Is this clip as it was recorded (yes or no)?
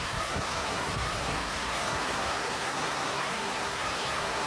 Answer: no